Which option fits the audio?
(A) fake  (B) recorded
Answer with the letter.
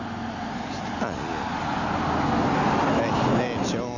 B